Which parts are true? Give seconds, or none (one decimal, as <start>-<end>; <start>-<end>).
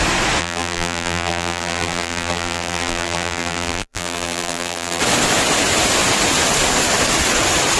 0.0-0.4; 5.0-7.8